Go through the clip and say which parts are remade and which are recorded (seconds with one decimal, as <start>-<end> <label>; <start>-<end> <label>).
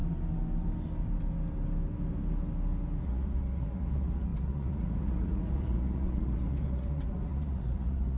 0.0-3.0 recorded; 3.0-8.2 remade